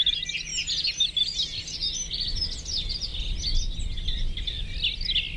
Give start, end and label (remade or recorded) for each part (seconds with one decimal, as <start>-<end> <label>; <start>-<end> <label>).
0.0-5.4 recorded

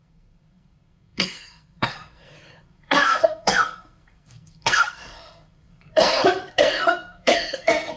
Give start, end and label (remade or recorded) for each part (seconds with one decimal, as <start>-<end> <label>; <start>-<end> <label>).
0.0-8.0 remade

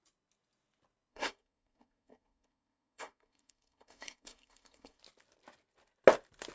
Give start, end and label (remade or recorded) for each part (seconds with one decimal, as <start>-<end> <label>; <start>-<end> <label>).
0.0-1.1 recorded; 1.1-5.0 remade; 5.0-6.5 recorded

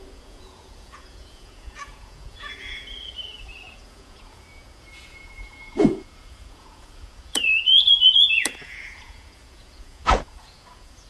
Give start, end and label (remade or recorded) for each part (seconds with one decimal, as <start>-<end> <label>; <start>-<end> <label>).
0.0-11.1 remade

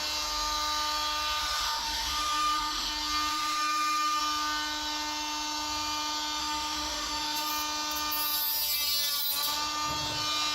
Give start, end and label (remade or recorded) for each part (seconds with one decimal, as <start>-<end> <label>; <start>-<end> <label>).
0.0-1.4 recorded; 1.4-2.9 remade; 2.9-3.3 recorded; 3.3-4.2 remade; 4.2-6.4 recorded; 6.4-7.5 remade; 7.5-10.5 recorded